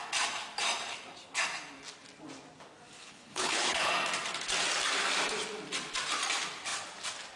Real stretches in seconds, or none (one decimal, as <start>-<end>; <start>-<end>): 0.0-3.0; 3.9-7.4